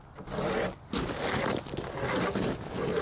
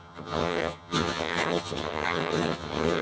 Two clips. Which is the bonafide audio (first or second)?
first